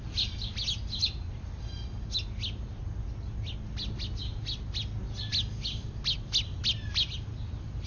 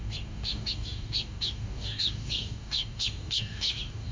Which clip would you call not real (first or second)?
second